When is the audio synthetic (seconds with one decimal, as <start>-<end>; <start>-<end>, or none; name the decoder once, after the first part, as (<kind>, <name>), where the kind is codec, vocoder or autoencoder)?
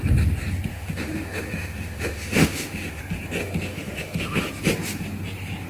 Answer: 0.7-3.0 (autoencoder, DAC-VAE); 3.4-4.5